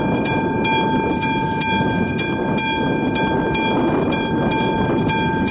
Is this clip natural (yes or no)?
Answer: yes